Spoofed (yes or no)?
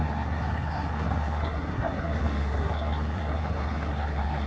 yes